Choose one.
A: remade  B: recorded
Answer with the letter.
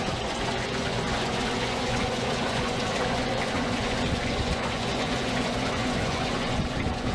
A